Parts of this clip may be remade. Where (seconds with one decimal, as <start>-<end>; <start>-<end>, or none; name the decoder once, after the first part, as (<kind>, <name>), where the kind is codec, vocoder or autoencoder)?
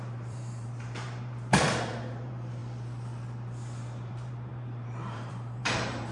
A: 0.0-2.6 (vocoder, BigVGAN v2); 4.1-6.1